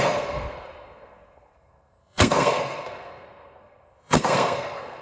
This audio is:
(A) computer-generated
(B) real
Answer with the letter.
A